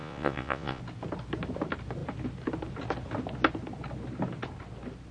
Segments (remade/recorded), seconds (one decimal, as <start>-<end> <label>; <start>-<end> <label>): 0.0-0.8 remade; 0.8-5.1 recorded